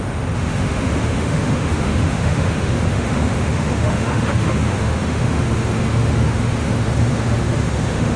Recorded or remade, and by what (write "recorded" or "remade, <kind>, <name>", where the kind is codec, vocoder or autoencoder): remade, autoencoder, DAC-VAE